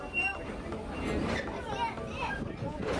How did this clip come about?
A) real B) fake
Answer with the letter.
B